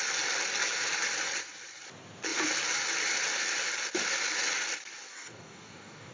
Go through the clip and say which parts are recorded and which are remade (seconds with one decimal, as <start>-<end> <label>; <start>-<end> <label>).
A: 0.0-5.1 recorded; 5.1-6.1 remade